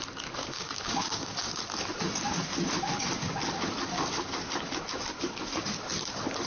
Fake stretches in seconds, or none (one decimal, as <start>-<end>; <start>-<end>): 0.4-1.6